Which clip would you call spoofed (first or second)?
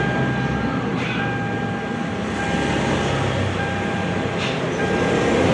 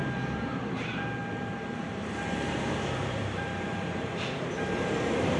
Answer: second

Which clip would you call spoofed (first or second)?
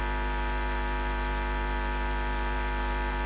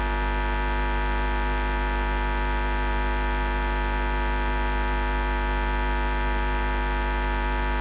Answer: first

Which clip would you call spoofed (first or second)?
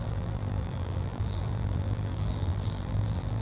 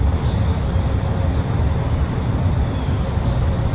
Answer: first